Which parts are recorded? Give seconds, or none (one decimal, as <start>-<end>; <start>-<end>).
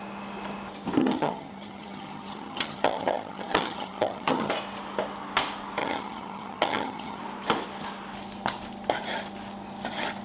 0.0-1.0; 4.5-5.8; 7.2-10.2